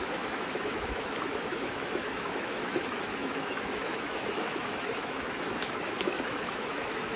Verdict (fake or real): fake